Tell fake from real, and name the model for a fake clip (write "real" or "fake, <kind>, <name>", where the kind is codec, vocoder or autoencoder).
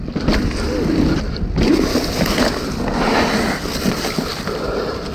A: real